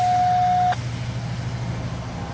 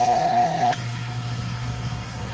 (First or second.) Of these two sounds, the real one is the first